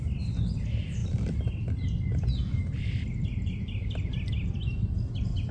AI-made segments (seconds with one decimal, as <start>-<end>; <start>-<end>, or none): none